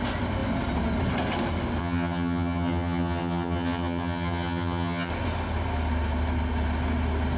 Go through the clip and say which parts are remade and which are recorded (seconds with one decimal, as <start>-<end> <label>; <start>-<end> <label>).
0.0-1.8 recorded; 1.8-5.1 remade; 5.1-7.4 recorded